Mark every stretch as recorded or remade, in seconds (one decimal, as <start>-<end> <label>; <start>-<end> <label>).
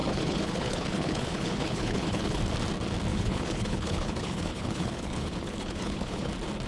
0.0-2.4 remade; 2.4-3.1 recorded; 3.1-6.3 remade; 6.3-6.7 recorded